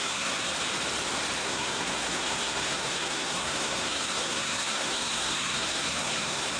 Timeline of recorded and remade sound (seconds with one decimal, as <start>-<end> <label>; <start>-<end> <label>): 0.0-0.5 remade; 0.5-1.4 recorded; 1.4-6.6 remade